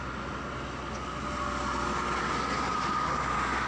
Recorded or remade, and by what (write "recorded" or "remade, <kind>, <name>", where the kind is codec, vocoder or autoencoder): recorded